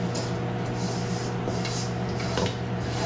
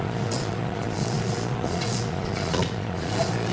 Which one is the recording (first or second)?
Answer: first